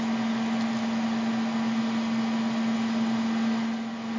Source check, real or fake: real